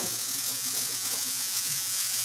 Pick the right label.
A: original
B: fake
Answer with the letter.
B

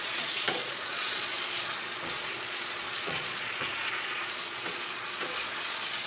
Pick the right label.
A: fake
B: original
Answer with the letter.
A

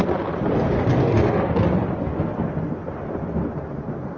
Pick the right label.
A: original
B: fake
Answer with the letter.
A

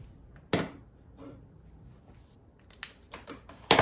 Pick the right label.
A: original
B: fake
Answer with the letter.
A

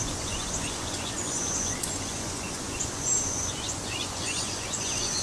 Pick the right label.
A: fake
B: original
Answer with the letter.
A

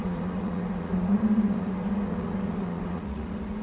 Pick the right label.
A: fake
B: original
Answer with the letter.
A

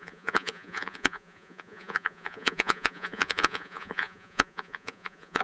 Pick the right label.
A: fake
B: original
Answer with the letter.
A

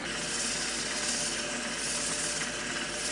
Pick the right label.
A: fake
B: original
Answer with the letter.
B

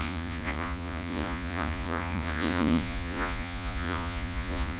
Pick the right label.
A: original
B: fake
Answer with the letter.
B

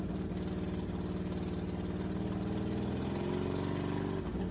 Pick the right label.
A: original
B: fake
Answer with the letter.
A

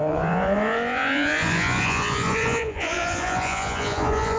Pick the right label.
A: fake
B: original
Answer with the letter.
A